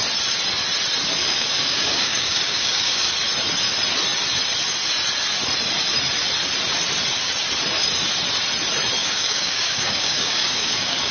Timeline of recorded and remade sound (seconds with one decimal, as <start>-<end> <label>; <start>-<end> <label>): 0.0-1.2 recorded; 1.2-3.1 remade; 3.1-9.0 recorded; 9.0-11.1 remade